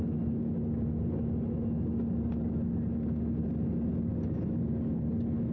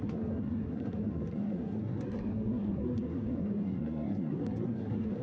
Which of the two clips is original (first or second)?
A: first